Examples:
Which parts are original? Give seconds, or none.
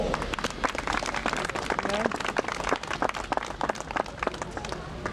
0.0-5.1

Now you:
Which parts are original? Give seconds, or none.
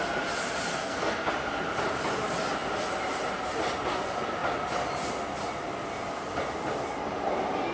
0.0-0.7; 1.3-7.7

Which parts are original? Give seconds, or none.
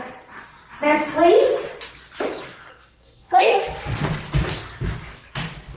0.0-2.7; 3.6-5.8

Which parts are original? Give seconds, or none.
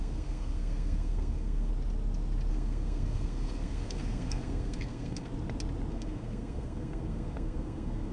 1.7-2.5; 5.3-5.9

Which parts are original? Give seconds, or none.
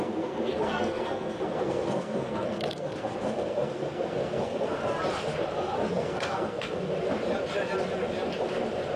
4.8-5.9; 6.8-9.0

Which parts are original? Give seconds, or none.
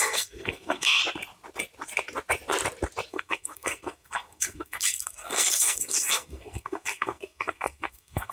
1.0-3.1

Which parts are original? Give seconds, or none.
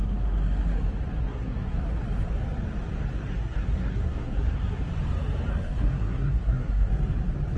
0.0-1.2; 1.8-3.3; 4.9-5.5; 6.9-7.6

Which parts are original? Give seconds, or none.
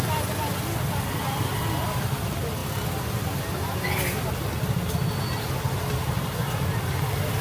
0.0-7.4